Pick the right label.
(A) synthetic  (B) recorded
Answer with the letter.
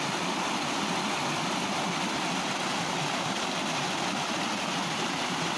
B